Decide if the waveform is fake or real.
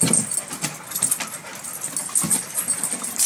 real